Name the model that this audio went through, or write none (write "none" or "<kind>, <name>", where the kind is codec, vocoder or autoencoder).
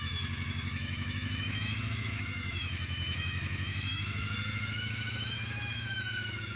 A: autoencoder, DAC-VAE